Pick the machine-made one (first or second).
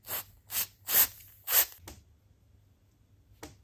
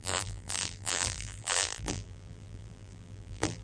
second